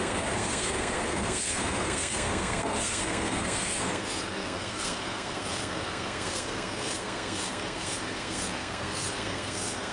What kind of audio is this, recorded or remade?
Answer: remade